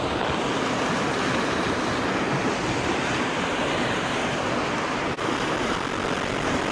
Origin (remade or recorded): recorded